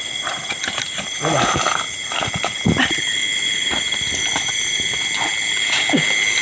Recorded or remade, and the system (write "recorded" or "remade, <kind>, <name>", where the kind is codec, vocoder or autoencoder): recorded